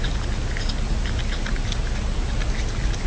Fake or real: real